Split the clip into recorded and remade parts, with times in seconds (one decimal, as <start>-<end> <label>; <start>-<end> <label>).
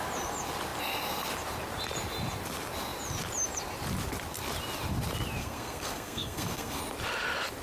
0.0-5.4 recorded; 5.4-6.8 remade; 6.8-7.6 recorded